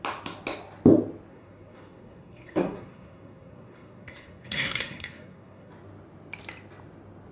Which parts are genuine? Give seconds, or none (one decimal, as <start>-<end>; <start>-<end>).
0.0-1.3; 5.7-7.3